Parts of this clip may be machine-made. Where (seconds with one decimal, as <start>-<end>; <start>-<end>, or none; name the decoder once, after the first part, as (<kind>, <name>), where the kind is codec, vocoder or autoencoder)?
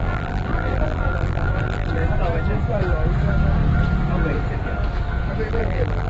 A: 0.0-2.0 (vocoder, BigVGAN v2); 5.5-6.1